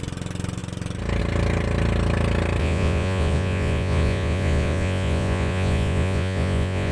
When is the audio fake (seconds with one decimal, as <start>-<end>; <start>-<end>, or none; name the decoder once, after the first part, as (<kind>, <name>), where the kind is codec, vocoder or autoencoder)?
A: 2.6-6.9 (vocoder, Vocos)